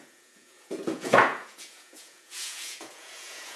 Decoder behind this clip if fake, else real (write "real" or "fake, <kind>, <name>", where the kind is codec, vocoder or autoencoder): fake, vocoder, Vocos